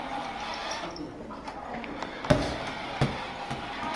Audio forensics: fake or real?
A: real